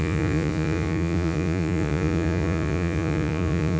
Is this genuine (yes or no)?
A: no